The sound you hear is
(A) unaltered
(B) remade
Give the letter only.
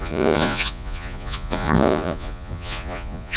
B